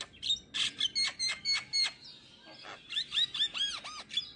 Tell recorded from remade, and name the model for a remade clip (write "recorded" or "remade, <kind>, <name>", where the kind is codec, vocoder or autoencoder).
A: recorded